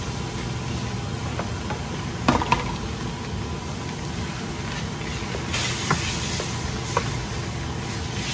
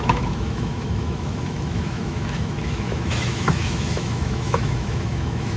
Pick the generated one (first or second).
second